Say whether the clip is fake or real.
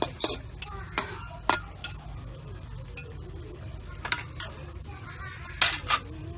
real